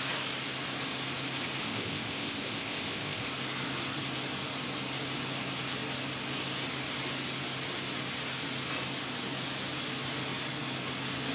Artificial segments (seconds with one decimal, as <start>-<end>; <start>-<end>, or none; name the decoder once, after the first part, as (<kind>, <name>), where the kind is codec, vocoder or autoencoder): 1.6-3.3 (codec, ZipCodec)

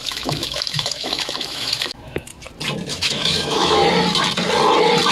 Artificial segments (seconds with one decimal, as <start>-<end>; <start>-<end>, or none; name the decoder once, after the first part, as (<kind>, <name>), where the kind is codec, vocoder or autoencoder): 0.0-2.3 (autoencoder, DAC-VAE); 2.9-3.8